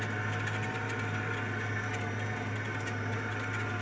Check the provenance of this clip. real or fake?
real